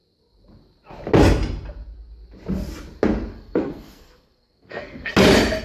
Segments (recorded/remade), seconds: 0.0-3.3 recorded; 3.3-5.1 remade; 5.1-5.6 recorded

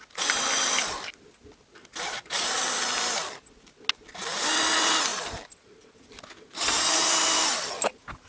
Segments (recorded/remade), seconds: 0.0-8.3 recorded

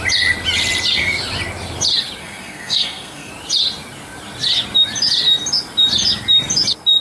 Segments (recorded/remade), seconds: 0.0-2.2 recorded; 2.2-3.3 remade; 3.3-7.0 recorded

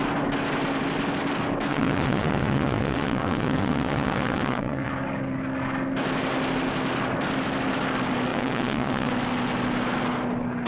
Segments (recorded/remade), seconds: 0.0-1.7 recorded; 1.7-4.9 remade; 4.9-8.3 recorded; 8.3-9.1 remade; 9.1-10.7 recorded

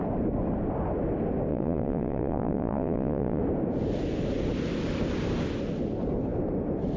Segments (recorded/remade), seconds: 0.0-1.5 recorded; 1.5-3.4 remade; 3.4-7.0 recorded

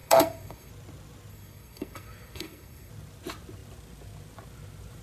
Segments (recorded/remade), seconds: 0.0-0.7 remade; 0.7-1.3 recorded; 1.3-2.9 remade; 2.9-5.0 recorded

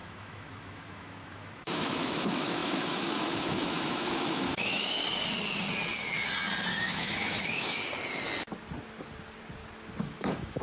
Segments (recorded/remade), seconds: 0.0-5.0 remade; 5.0-6.8 recorded; 6.8-7.8 remade; 7.8-10.0 recorded; 10.0-10.6 remade